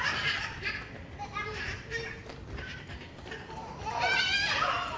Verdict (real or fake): real